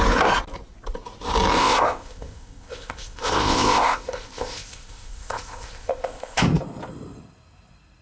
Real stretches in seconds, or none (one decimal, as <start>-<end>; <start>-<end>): 0.0-1.6; 6.4-8.0